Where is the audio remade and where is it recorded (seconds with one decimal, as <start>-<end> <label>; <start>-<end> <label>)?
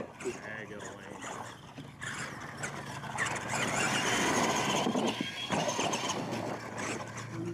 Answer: 0.0-1.7 remade; 1.7-5.4 recorded; 5.4-7.5 remade